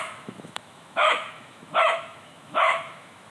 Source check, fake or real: fake